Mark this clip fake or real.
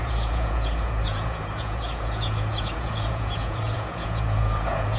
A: fake